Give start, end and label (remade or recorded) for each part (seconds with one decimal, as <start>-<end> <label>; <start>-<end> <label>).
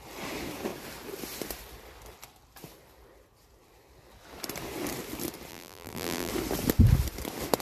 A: 0.0-5.5 recorded; 5.5-6.3 remade; 6.3-7.6 recorded